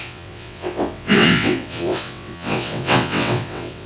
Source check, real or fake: fake